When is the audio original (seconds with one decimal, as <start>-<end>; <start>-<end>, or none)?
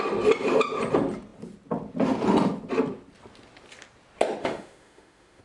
0.0-4.4